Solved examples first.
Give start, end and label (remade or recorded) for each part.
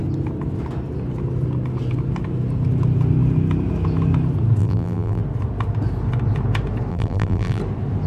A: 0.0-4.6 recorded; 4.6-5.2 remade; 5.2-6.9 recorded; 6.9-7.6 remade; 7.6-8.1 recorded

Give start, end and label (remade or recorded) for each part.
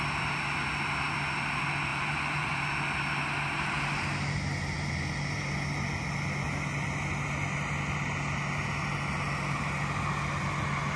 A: 0.0-1.9 recorded; 1.9-2.6 remade; 2.6-11.0 recorded